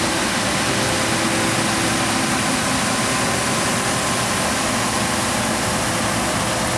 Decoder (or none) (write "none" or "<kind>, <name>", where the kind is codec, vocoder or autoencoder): none